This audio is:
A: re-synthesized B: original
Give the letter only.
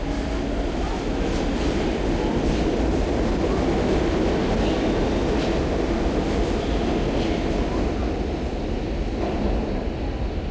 B